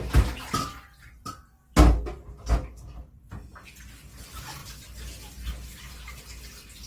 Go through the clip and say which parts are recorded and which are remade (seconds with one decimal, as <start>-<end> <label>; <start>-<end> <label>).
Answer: 0.0-6.9 recorded